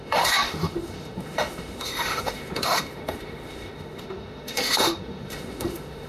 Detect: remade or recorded remade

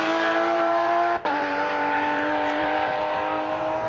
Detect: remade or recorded remade